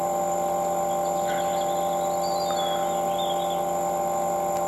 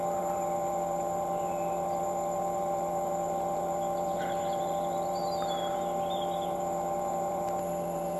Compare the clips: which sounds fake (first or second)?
second